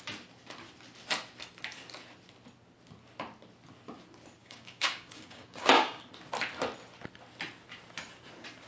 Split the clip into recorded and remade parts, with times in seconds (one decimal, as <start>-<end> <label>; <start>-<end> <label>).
0.0-4.4 recorded; 4.4-6.0 remade; 6.0-8.7 recorded